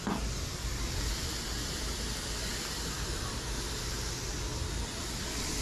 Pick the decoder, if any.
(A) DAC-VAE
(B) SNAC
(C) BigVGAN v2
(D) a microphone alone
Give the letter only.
D